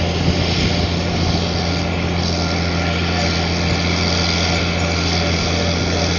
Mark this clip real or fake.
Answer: real